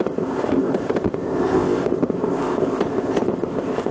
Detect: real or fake fake